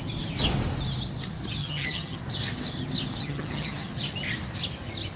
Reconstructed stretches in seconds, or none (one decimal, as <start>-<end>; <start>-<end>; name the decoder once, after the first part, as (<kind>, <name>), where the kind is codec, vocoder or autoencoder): 1.6-2.2 (vocoder, HiFi-GAN); 3.2-4.0